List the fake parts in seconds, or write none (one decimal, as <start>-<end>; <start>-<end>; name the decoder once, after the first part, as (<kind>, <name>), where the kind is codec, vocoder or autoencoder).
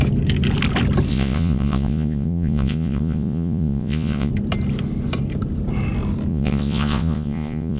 1.1-4.3 (vocoder, Vocos); 6.3-7.8